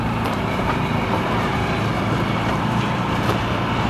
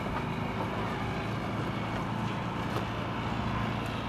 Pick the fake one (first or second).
first